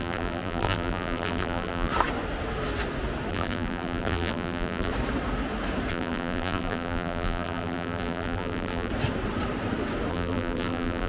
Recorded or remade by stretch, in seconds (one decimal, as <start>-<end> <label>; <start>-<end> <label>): 0.0-1.9 remade; 1.9-3.3 recorded; 3.3-4.9 remade; 4.9-5.9 recorded; 5.9-8.9 remade; 8.9-10.1 recorded; 10.1-11.1 remade